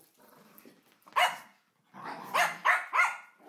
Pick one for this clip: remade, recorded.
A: recorded